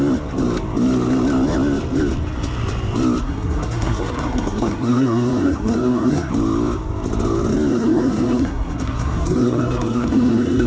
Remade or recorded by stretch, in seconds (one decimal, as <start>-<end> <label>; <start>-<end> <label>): 0.0-3.2 recorded; 3.2-6.3 remade; 6.3-7.7 recorded; 7.7-10.7 remade